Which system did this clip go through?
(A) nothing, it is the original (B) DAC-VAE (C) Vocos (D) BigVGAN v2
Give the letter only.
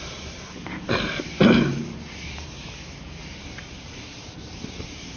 D